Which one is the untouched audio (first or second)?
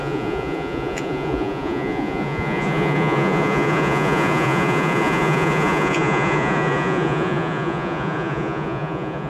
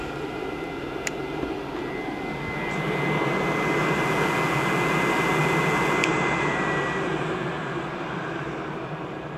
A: second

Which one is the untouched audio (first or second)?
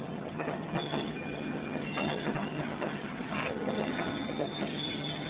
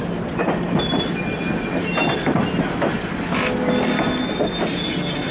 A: second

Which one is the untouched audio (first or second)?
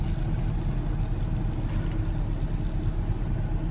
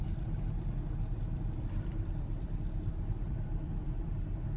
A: first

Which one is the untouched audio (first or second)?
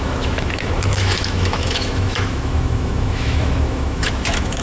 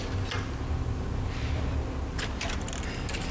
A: second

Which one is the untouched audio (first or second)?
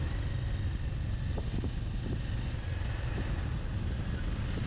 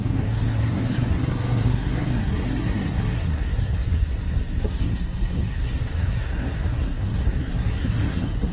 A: first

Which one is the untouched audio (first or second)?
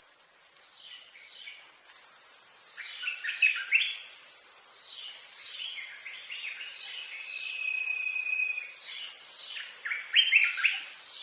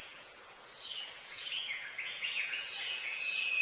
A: first